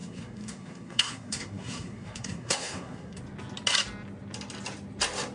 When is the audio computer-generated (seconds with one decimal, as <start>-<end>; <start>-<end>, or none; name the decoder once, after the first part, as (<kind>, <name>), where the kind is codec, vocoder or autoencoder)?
0.0-3.2 (codec, SNAC)